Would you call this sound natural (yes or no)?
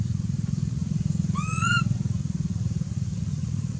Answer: no